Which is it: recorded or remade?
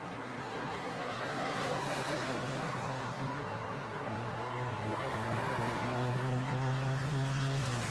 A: remade